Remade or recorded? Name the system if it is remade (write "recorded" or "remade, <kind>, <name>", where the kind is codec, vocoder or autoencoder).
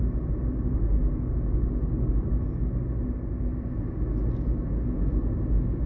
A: recorded